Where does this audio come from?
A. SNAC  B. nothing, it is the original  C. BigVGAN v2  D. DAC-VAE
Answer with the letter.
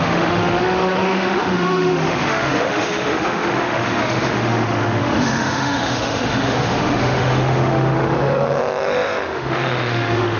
D